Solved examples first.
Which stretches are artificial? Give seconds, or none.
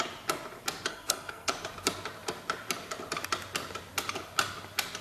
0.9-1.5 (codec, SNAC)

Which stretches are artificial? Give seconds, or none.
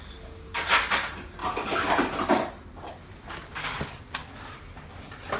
none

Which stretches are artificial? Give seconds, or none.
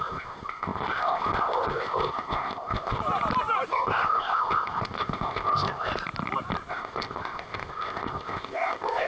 0.0-3.0 (codec, ZipCodec); 3.7-5.9; 6.7-9.1